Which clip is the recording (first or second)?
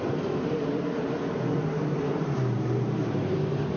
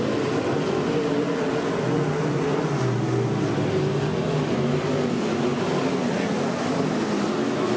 second